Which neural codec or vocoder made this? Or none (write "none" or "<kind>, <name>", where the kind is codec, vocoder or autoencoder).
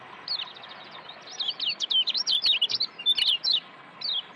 none